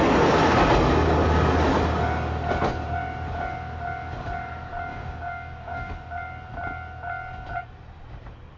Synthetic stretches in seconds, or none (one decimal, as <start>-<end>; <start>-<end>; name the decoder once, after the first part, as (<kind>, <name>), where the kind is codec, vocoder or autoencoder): 4.9-5.9 (codec, DAC)